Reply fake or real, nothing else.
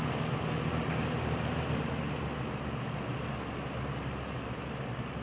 real